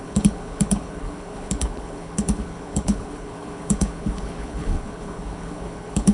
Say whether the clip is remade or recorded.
remade